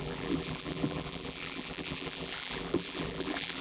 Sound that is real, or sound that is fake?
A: fake